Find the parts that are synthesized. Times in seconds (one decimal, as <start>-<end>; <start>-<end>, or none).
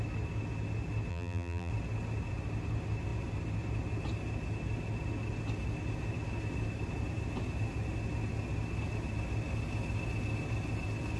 1.1-1.7